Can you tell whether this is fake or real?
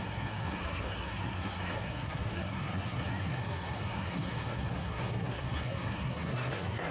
fake